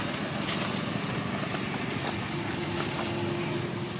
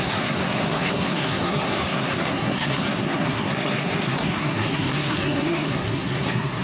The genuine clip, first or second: first